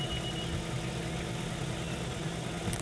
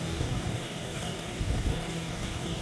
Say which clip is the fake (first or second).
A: second